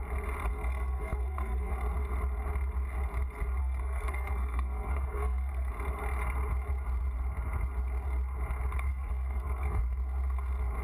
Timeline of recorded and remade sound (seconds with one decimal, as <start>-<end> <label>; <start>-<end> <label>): 0.0-0.5 recorded; 0.5-1.7 remade; 1.7-3.6 recorded; 3.6-5.7 remade; 5.7-8.9 recorded; 8.9-9.8 remade; 9.8-10.8 recorded